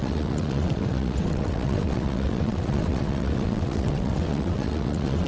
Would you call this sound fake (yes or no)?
yes